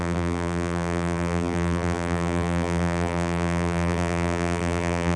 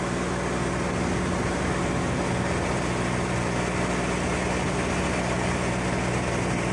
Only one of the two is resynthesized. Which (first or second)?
first